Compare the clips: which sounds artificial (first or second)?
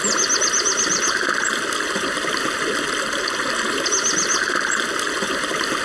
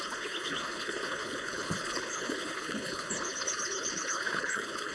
second